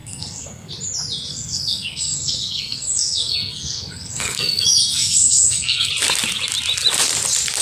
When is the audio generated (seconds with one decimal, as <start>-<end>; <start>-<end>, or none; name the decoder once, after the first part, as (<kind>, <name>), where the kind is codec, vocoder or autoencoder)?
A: 0.0-0.7 (codec, SNAC); 1.3-5.9